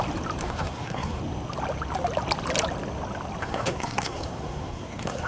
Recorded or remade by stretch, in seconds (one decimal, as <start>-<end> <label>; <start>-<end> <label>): 0.0-0.4 recorded; 0.4-1.2 remade; 1.2-3.4 recorded; 3.4-5.3 remade